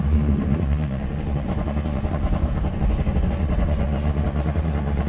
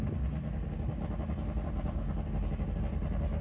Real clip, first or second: second